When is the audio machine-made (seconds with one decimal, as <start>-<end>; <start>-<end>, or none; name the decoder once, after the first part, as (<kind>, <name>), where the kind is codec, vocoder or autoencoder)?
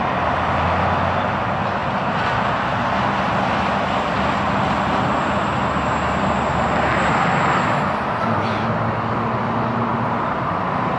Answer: 1.8-5.3 (vocoder, BigVGAN v2); 9.9-10.5